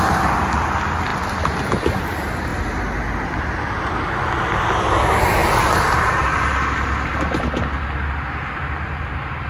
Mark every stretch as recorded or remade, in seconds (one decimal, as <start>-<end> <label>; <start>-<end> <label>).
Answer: 0.0-9.5 recorded